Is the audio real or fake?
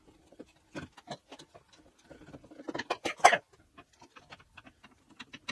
real